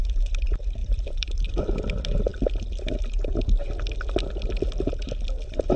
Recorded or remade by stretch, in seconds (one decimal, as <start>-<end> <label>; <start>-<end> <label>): 0.0-0.8 recorded; 0.8-1.6 remade; 1.6-5.8 recorded